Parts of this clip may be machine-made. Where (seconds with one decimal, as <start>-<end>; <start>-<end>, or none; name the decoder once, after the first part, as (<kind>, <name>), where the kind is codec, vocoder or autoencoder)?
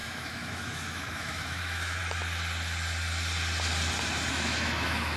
0.0-2.0 (autoencoder, DAC-VAE); 4.3-5.2